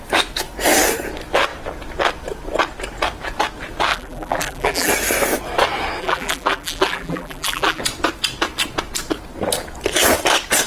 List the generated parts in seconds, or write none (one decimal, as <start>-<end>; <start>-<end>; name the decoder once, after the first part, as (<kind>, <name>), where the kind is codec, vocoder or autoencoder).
3.9-4.9 (vocoder, BigVGAN v2); 6.0-7.8